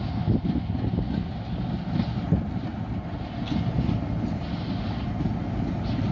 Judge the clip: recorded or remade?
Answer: recorded